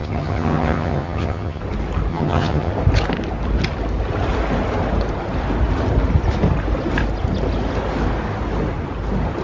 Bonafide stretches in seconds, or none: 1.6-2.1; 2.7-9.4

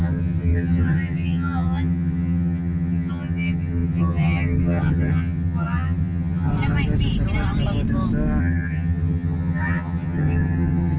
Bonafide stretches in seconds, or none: 6.5-8.4

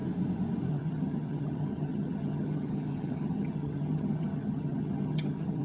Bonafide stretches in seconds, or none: 0.0-0.7

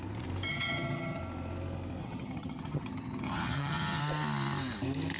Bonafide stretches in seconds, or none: 0.0-0.5; 1.2-2.0; 4.0-5.2